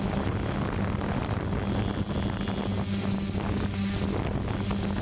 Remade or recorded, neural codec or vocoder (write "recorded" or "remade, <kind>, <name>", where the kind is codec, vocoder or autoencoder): recorded